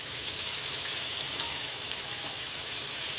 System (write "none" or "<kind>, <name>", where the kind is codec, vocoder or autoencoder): autoencoder, DAC-VAE